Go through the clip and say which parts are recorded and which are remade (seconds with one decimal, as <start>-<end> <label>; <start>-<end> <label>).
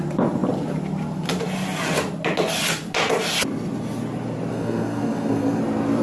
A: 0.0-4.5 recorded; 4.5-5.6 remade; 5.6-6.0 recorded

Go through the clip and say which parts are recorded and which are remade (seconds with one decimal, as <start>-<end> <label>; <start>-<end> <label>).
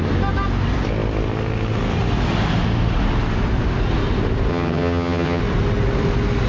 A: 0.0-4.5 recorded; 4.5-5.4 remade; 5.4-6.5 recorded